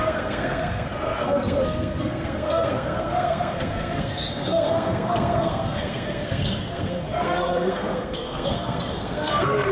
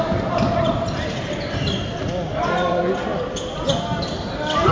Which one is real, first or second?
second